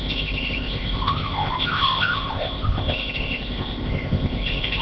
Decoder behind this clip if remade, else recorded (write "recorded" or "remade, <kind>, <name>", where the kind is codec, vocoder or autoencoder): remade, codec, ZipCodec